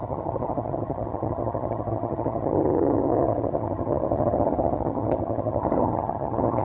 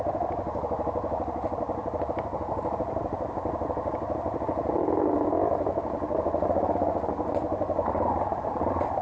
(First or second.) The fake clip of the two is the first